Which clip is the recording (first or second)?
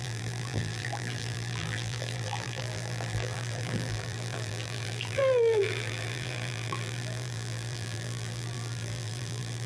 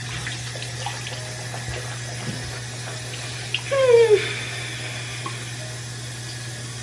second